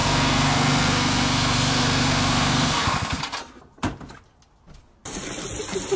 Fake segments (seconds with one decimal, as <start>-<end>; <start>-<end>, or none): 0.0-3.2